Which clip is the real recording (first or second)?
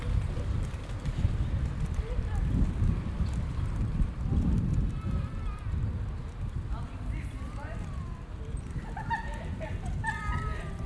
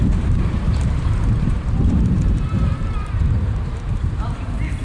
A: first